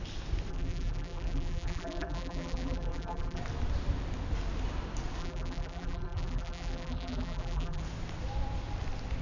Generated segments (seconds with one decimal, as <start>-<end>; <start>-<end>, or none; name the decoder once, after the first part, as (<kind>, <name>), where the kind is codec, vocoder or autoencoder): 0.5-3.4 (vocoder, BigVGAN v2); 5.2-7.8